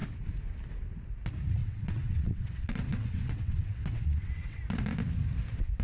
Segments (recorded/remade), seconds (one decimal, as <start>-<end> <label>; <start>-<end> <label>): 0.0-1.6 recorded; 1.6-4.6 remade; 4.6-5.8 recorded